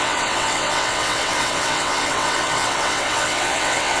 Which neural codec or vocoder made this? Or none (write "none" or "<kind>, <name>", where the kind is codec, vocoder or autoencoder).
vocoder, WaveNeXt